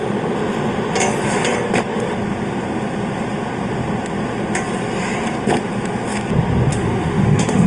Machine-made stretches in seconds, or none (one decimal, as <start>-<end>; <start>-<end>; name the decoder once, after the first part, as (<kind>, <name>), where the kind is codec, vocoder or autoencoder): 6.7-7.7 (autoencoder, DAC-VAE)